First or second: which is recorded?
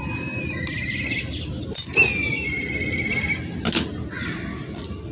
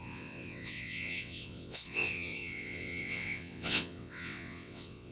first